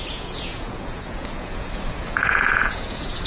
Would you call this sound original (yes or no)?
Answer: no